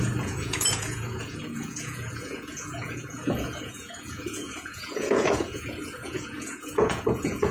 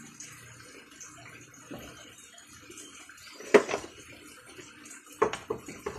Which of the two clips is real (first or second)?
second